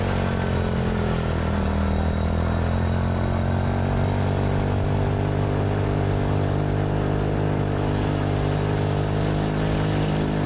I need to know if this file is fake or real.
real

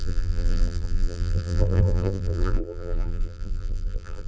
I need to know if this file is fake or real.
fake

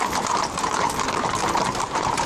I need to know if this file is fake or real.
fake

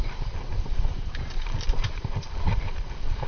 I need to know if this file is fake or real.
fake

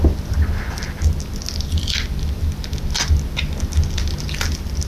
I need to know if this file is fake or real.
real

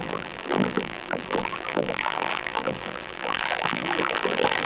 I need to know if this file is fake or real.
fake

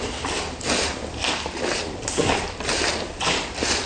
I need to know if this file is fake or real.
real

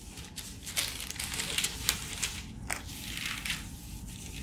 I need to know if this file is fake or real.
real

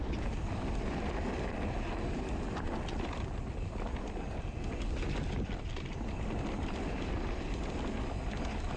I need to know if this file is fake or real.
real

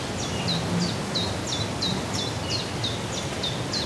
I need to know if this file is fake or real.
real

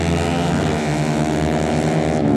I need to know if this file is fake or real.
real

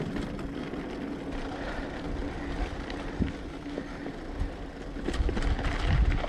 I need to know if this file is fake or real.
real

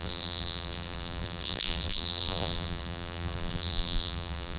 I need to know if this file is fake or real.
fake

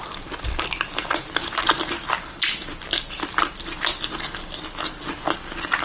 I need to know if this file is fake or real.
real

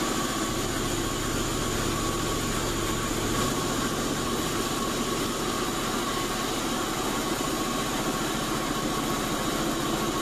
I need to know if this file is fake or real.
real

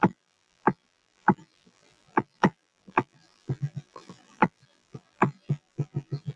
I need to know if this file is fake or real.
fake